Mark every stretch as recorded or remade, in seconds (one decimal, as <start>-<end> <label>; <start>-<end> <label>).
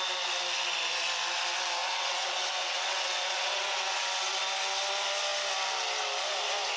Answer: 0.0-1.8 recorded; 1.8-4.4 remade; 4.4-6.8 recorded